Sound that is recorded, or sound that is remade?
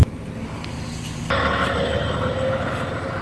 recorded